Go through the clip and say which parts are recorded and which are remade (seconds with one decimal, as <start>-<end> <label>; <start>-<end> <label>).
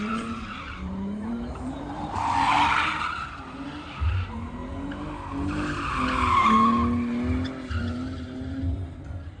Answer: 0.0-3.4 remade; 3.4-7.8 recorded; 7.8-9.4 remade